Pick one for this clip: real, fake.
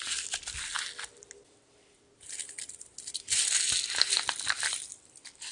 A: real